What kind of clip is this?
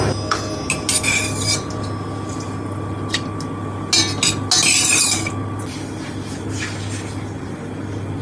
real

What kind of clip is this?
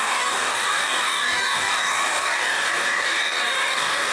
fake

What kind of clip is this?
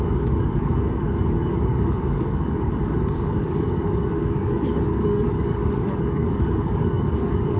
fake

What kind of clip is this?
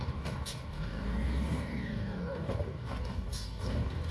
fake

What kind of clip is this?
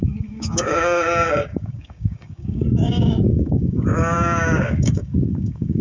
fake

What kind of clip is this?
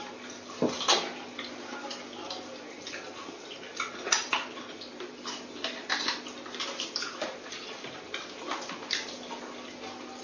real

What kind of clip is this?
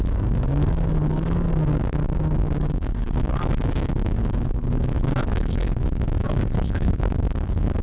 fake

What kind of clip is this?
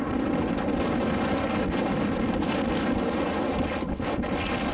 real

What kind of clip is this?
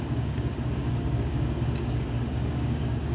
fake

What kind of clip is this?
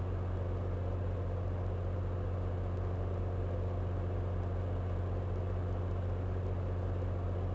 real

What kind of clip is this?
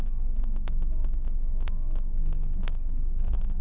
fake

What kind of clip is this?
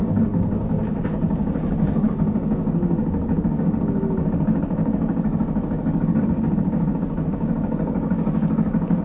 fake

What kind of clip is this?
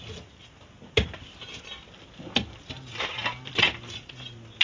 real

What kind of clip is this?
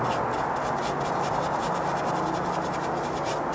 real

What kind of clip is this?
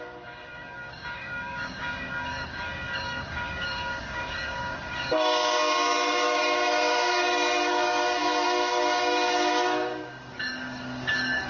fake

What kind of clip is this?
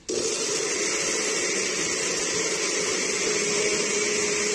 real